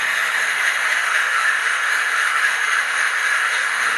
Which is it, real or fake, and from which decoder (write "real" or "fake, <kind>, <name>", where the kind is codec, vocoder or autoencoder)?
fake, autoencoder, DAC-VAE